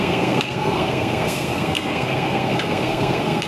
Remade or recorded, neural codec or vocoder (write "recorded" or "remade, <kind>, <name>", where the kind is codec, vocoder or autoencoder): remade, codec, SNAC